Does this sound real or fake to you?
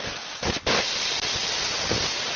real